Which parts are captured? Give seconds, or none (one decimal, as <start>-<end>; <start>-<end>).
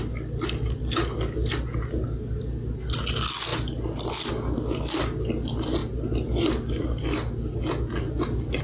0.0-8.6